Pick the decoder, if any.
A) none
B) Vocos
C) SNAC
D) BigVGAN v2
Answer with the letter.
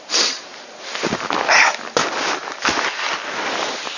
A